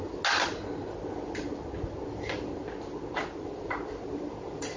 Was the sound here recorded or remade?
recorded